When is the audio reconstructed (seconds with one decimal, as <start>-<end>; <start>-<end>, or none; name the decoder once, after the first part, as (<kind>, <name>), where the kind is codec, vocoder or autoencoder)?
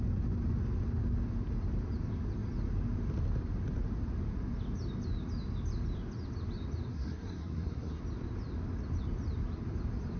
6.9-8.0 (codec, SNAC)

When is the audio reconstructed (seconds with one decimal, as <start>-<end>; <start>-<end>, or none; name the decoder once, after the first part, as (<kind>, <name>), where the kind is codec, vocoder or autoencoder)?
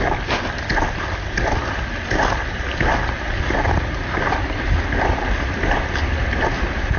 none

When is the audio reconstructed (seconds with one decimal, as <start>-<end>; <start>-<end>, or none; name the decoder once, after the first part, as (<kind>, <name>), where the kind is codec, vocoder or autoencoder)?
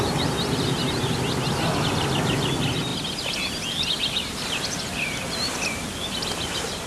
none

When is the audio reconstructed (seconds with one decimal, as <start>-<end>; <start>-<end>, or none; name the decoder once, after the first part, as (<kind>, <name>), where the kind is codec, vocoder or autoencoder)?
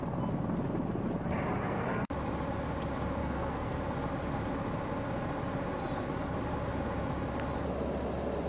1.6-2.1 (codec, SNAC); 3.2-3.8